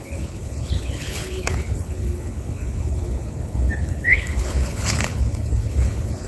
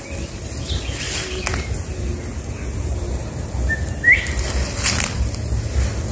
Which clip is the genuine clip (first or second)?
second